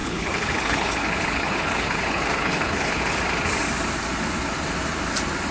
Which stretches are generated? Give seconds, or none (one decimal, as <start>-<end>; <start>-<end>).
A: 0.0-3.0